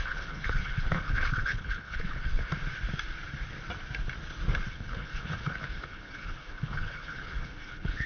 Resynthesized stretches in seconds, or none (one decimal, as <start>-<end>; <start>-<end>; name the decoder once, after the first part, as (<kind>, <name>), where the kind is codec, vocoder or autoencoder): 0.0-2.5 (codec, HILCodec); 4.7-8.1